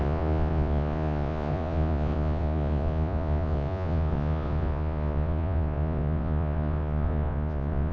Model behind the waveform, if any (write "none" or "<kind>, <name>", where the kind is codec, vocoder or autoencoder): vocoder, Vocos